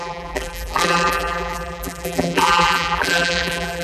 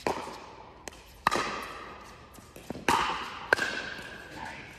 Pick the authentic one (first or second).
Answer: second